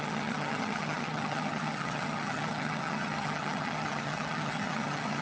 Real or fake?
fake